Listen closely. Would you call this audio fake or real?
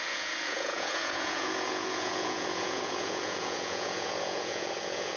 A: fake